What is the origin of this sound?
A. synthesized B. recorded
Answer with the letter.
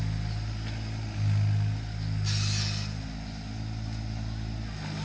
B